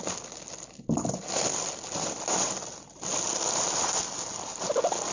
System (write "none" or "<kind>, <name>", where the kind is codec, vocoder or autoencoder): none